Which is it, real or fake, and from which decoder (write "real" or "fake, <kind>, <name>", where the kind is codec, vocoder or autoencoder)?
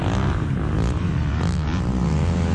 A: real